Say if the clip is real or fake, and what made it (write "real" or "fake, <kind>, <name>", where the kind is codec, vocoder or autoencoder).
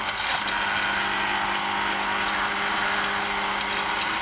real